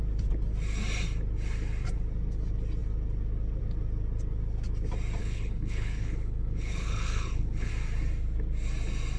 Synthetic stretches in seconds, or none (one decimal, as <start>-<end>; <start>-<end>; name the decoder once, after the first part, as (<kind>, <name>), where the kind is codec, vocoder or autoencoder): 5.2-7.7 (codec, HILCodec)